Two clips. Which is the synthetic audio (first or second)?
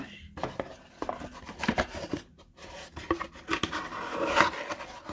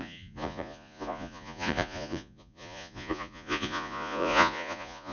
second